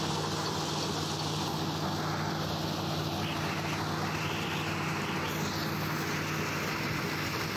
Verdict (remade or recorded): recorded